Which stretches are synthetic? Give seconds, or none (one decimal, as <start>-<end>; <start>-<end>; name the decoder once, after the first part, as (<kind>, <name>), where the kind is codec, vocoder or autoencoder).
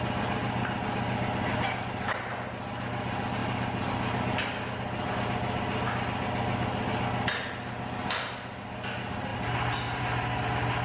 none